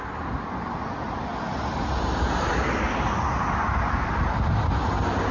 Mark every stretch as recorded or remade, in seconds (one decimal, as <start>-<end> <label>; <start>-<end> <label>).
0.0-5.3 recorded